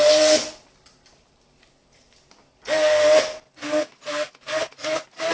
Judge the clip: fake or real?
real